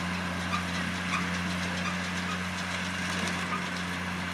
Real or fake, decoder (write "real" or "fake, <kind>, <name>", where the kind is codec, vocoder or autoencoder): real